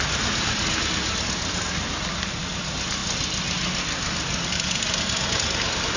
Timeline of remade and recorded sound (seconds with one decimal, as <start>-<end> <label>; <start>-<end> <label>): 0.0-6.0 recorded